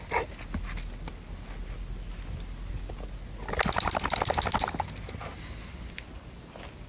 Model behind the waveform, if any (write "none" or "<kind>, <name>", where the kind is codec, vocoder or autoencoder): none